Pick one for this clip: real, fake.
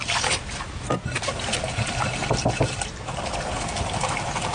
real